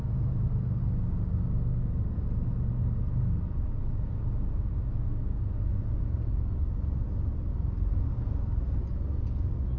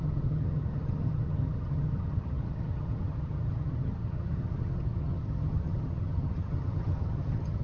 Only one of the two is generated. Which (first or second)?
second